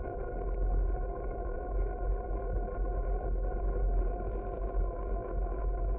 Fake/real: real